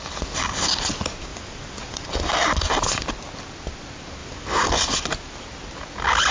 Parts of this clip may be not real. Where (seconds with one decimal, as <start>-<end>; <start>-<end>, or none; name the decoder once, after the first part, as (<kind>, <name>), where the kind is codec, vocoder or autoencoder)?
1.3-2.6 (vocoder, BigVGAN v2); 4.2-4.8

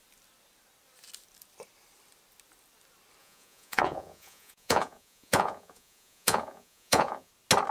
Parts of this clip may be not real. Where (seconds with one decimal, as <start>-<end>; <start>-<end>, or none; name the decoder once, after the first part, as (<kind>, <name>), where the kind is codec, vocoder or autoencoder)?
3.2-7.3 (vocoder, Vocos)